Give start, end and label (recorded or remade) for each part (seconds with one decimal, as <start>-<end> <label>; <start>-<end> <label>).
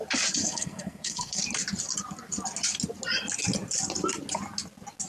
0.0-0.4 recorded; 0.4-1.4 remade; 1.4-5.1 recorded